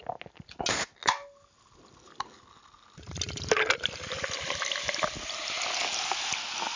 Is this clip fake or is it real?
real